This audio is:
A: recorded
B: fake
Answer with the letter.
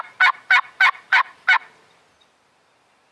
A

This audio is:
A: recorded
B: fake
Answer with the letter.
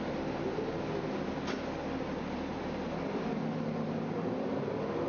A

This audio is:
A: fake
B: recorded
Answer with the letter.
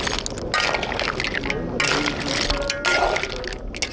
B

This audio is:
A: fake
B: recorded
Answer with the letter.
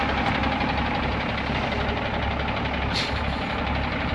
B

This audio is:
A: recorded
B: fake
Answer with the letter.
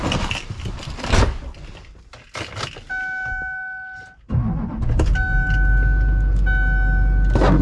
A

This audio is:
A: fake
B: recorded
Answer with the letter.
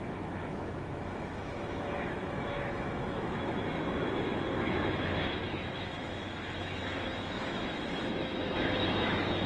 A